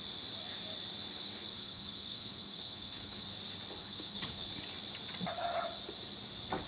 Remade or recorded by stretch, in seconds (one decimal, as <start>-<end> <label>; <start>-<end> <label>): 0.0-1.5 recorded; 1.5-3.2 remade; 3.2-3.8 recorded; 3.8-4.5 remade; 4.5-6.7 recorded